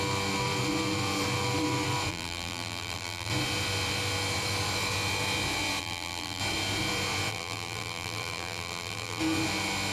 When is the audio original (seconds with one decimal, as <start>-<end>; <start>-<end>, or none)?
0.0-2.1; 3.3-5.8; 6.4-7.3; 9.2-9.9